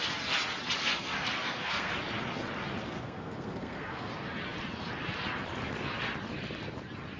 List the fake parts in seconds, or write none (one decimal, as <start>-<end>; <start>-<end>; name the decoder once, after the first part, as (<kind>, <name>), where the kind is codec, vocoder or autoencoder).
0.8-1.9 (codec, SNAC); 2.8-4.1